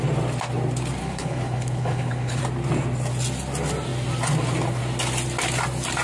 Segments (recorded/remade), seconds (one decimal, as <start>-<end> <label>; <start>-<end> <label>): 0.0-1.0 recorded; 1.0-2.4 remade; 2.4-6.0 recorded